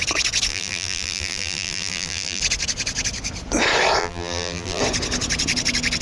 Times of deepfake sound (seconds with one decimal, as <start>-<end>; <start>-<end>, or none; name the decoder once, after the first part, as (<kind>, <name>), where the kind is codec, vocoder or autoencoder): 0.5-2.4 (vocoder, BigVGAN v2); 4.0-4.8